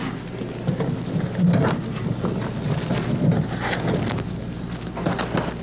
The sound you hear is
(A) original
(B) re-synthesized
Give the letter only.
A